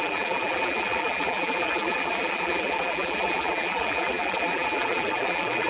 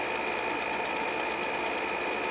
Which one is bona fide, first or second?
second